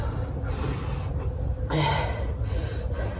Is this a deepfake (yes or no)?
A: no